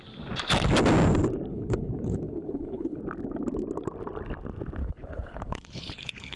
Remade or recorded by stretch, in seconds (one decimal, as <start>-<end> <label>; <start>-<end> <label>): 0.0-1.5 recorded; 1.5-3.0 remade; 3.0-4.8 recorded; 4.8-6.4 remade